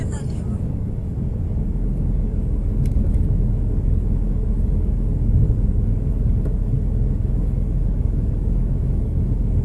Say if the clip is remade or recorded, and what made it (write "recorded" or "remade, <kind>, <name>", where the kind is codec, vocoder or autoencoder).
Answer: remade, codec, DAC